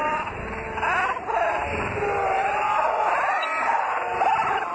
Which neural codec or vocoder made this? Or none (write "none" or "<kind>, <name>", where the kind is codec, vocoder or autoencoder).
none